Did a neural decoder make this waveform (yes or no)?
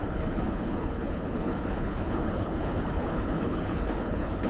yes